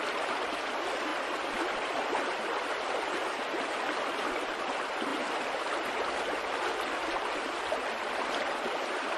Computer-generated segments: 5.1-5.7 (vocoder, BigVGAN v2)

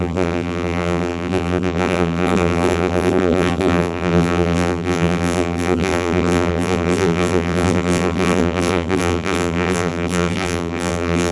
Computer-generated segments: 0.0-11.3 (vocoder, BigVGAN v2)

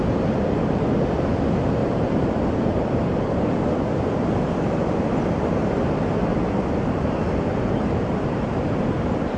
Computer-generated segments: 1.8-3.5 (vocoder, BigVGAN v2); 6.3-7.1; 7.5-8.8

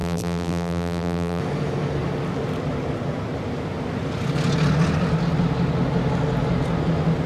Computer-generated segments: 0.0-1.4 (vocoder, BigVGAN v2)